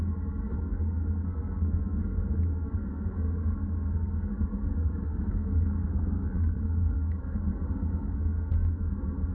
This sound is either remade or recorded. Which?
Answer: remade